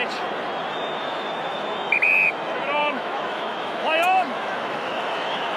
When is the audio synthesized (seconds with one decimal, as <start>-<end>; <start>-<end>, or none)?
2.8-5.6